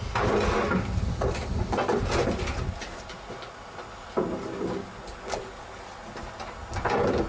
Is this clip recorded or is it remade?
recorded